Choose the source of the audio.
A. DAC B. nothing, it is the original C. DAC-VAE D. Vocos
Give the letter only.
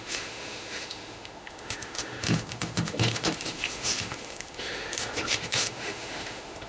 C